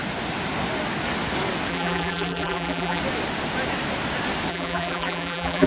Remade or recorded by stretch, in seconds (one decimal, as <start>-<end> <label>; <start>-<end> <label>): 0.0-1.7 recorded; 1.7-3.0 remade; 3.0-4.5 recorded; 4.5-5.7 remade